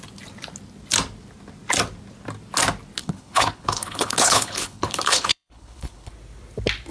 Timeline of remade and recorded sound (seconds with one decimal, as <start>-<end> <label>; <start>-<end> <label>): 0.0-3.0 recorded; 3.0-6.1 remade; 6.1-6.9 recorded